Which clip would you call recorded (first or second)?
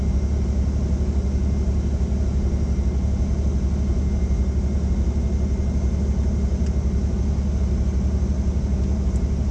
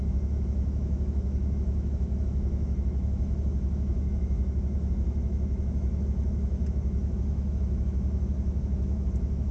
first